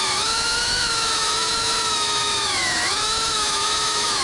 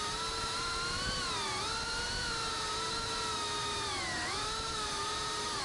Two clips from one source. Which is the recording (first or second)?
second